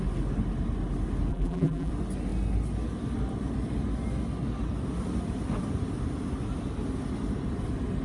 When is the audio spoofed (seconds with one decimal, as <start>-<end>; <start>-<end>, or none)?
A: 1.3-1.9